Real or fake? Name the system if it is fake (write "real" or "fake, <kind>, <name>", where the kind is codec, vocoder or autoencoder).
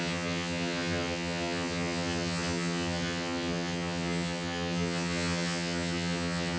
fake, vocoder, HiFi-GAN